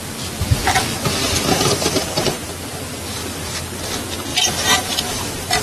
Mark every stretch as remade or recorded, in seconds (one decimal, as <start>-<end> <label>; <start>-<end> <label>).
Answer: 0.0-1.2 recorded; 1.2-2.5 remade; 2.5-4.3 recorded; 4.3-5.6 remade